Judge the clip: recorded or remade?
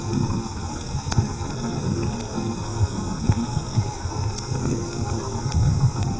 remade